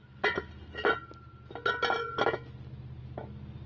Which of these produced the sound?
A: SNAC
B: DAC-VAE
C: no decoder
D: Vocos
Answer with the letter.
C